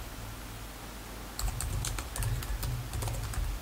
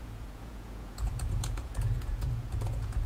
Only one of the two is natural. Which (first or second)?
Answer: first